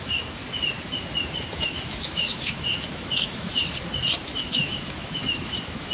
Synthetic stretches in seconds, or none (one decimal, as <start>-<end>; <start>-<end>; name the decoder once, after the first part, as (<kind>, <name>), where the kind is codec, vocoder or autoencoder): 0.0-0.4 (autoencoder, DAC-VAE); 1.5-3.5; 4.4-5.9

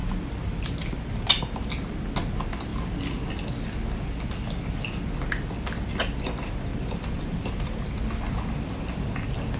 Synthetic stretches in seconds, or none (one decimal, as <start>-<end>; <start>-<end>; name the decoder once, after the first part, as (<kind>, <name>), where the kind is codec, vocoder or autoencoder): 0.0-1.4 (vocoder, BigVGAN v2); 6.7-8.8

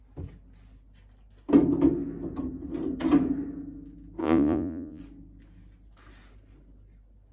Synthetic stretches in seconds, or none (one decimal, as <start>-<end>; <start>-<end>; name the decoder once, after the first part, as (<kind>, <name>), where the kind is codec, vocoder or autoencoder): 4.2-5.0 (vocoder, Vocos)